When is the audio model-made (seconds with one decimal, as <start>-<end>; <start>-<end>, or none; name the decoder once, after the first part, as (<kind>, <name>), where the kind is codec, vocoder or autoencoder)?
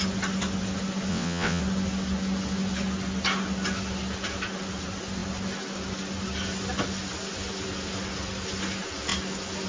1.1-1.6 (vocoder, WaveNeXt)